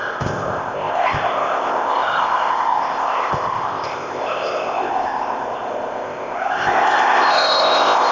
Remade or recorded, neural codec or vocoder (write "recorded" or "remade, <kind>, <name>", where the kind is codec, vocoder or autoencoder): remade, codec, ZipCodec